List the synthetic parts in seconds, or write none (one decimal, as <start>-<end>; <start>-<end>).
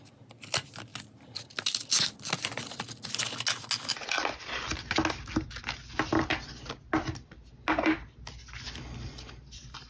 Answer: none